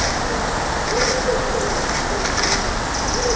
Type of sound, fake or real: real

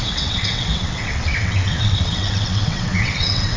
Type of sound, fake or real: fake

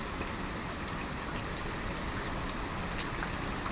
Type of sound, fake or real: real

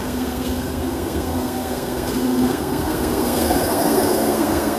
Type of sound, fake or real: fake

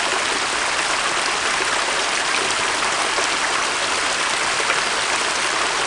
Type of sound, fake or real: real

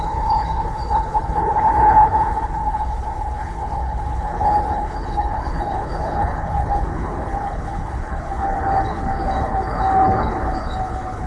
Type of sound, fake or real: fake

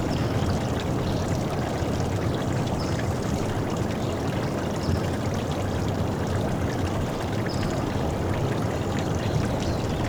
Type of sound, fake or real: real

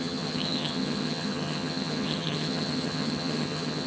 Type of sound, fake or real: fake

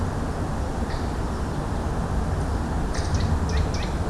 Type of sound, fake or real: real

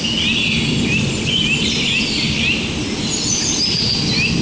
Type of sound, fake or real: real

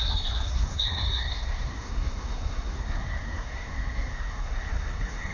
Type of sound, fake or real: fake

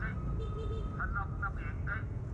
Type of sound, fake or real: real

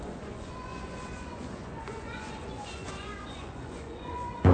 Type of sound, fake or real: fake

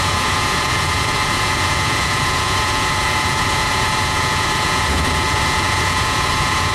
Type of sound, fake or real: fake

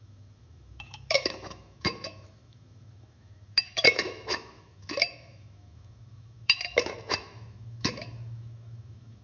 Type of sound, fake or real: fake